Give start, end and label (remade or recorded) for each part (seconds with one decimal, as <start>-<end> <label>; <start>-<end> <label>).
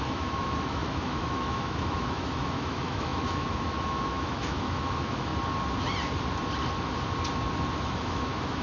0.0-5.3 remade; 5.3-7.8 recorded; 7.8-8.6 remade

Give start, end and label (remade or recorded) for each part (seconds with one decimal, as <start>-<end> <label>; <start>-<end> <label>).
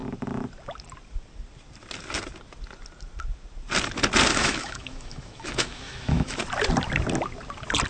0.0-4.3 recorded; 4.3-6.4 remade; 6.4-7.9 recorded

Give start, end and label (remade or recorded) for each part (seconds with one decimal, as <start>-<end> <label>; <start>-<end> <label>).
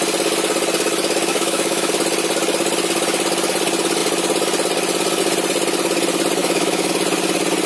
0.0-1.3 recorded; 1.3-1.9 remade; 1.9-6.4 recorded; 6.4-6.9 remade; 6.9-7.7 recorded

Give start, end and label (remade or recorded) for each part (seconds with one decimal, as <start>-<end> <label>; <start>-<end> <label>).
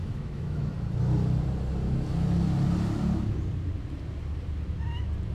0.0-0.7 remade; 0.7-5.3 recorded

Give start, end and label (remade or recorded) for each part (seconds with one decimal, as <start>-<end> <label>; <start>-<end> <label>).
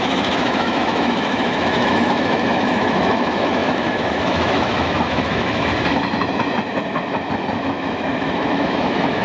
0.0-5.7 remade; 5.7-7.6 recorded; 7.6-9.2 remade